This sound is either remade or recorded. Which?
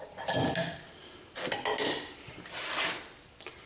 recorded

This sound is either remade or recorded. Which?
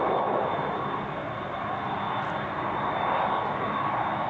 recorded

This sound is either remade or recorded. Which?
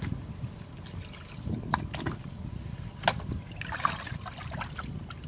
recorded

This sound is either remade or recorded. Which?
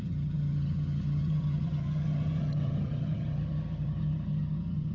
remade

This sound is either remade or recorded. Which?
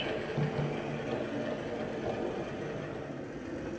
recorded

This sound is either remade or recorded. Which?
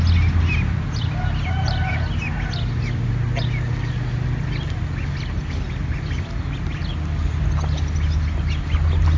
recorded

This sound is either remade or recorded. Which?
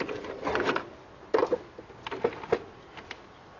recorded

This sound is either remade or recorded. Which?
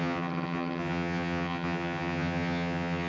remade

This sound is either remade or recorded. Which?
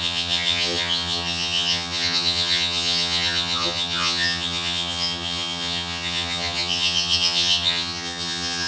remade